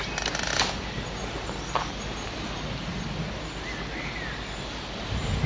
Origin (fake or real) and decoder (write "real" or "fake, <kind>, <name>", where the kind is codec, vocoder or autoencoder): real